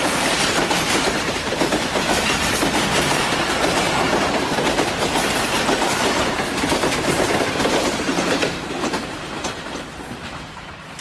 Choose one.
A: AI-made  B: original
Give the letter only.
A